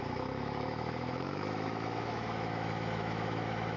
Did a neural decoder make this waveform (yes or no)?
yes